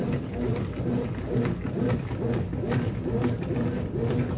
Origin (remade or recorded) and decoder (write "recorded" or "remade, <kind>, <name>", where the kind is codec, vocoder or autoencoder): recorded